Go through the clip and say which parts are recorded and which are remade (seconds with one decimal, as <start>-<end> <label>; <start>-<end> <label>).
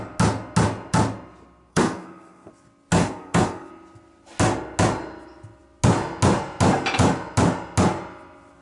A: 0.0-1.7 recorded; 1.7-2.5 remade; 2.5-3.0 recorded; 3.0-3.7 remade; 3.7-8.6 recorded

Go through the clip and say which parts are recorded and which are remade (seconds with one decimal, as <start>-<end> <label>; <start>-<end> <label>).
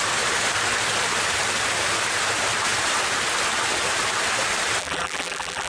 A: 0.0-4.8 recorded; 4.8-5.7 remade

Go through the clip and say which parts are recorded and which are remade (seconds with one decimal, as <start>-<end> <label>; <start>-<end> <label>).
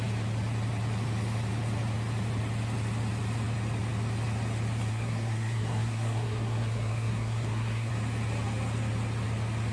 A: 0.0-4.9 recorded; 4.9-7.9 remade; 7.9-9.7 recorded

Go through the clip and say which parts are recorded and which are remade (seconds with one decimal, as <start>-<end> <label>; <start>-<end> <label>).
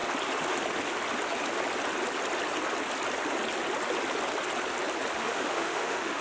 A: 0.0-5.2 recorded; 5.2-6.2 remade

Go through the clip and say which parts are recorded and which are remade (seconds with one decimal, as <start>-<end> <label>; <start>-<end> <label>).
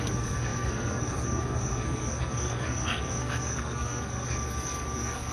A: 0.0-5.3 remade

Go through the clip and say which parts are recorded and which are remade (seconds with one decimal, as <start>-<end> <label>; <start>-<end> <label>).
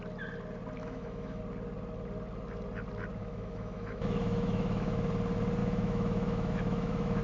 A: 0.0-0.8 recorded; 0.8-1.4 remade; 1.4-3.2 recorded; 3.2-5.1 remade; 5.1-5.6 recorded; 5.6-7.2 remade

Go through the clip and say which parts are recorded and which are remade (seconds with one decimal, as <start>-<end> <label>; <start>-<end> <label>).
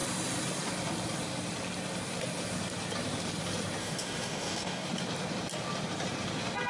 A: 0.0-3.8 recorded; 3.8-4.9 remade; 4.9-6.7 recorded